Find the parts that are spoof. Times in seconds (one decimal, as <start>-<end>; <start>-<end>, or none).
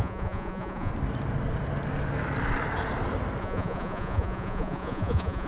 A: 0.0-0.9; 3.4-5.5